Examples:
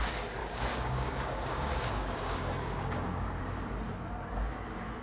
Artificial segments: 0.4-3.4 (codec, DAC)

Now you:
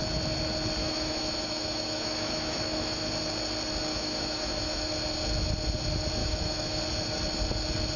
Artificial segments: 0.8-3.1 (autoencoder, DAC-VAE); 3.9-4.9; 6.2-6.8

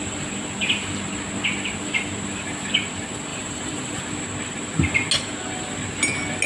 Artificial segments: 3.3-4.0 (vocoder, BigVGAN v2)

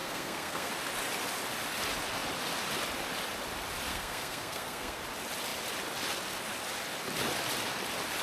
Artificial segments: 0.0-0.7 (codec, SNAC); 3.9-5.0

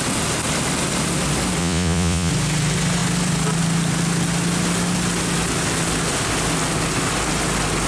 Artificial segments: 1.6-2.3 (vocoder, Vocos)